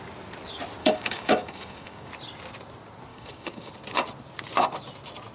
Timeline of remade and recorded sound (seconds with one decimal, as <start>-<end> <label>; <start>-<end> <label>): 0.0-0.8 recorded; 0.8-2.1 remade; 2.1-3.1 recorded; 3.1-3.7 remade; 3.7-5.3 recorded